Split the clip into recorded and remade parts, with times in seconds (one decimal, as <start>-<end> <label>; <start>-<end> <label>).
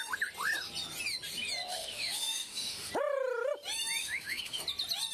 0.0-1.7 recorded; 1.7-2.9 remade; 2.9-4.0 recorded; 4.0-4.6 remade; 4.6-5.1 recorded